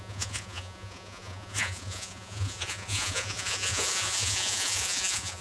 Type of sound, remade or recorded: remade